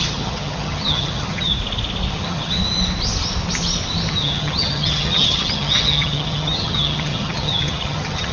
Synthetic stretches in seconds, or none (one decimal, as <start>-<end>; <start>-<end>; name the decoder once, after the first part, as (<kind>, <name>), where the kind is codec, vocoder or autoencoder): 0.0-1.5 (vocoder, HiFi-GAN); 2.1-2.6; 4.1-8.3